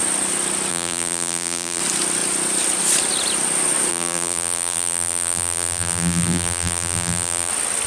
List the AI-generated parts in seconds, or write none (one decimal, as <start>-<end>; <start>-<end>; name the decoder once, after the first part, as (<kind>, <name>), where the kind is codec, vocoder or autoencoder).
0.7-1.8 (vocoder, BigVGAN v2); 3.9-7.5